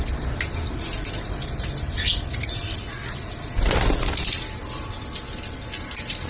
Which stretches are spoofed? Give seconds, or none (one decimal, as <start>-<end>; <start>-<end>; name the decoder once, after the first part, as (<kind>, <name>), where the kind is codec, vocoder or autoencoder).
none